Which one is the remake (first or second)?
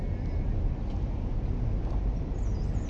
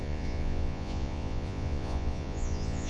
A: second